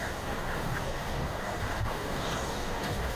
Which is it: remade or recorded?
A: remade